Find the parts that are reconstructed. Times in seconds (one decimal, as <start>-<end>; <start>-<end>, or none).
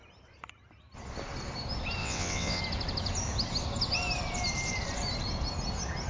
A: 2.0-2.6